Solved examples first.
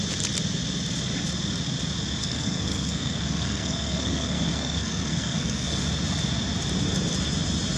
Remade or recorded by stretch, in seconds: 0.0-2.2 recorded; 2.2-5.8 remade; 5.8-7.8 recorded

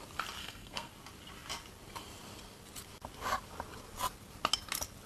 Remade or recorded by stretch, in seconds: 0.0-0.4 recorded; 0.4-0.9 remade; 0.9-5.1 recorded

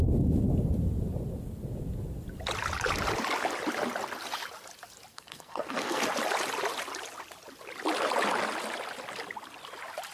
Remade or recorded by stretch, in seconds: 0.0-5.1 recorded; 5.1-6.0 remade; 6.0-10.1 recorded